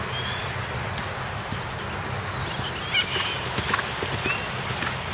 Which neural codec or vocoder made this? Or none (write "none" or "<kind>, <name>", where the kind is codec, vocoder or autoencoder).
none